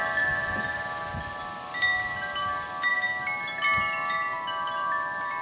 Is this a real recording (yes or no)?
yes